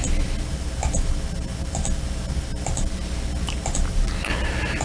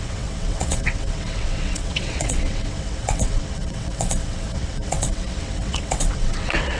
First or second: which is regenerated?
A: second